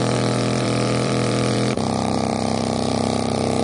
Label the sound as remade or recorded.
remade